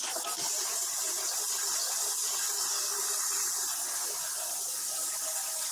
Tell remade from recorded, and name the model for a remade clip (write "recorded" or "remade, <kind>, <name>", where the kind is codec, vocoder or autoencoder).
recorded